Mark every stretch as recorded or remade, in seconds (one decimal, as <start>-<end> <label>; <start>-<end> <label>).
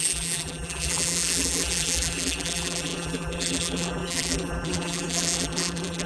0.0-6.1 remade